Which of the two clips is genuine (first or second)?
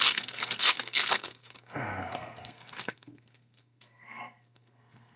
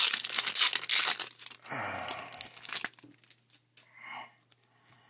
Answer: second